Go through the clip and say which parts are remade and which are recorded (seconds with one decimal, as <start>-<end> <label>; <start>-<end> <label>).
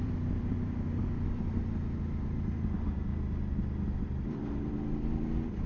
0.0-3.1 remade; 3.1-4.0 recorded; 4.0-5.7 remade